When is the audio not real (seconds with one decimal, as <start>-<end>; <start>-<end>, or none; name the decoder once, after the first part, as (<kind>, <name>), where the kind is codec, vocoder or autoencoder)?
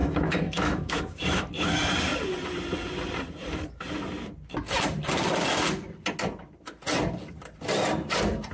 0.0-1.5 (autoencoder, DAC-VAE)